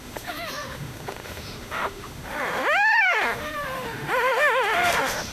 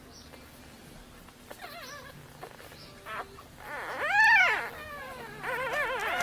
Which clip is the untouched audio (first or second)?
second